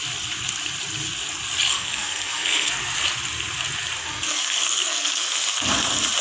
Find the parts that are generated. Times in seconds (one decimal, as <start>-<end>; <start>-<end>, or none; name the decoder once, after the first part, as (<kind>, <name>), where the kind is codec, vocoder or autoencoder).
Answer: 1.7-2.7 (codec, SNAC); 4.0-5.7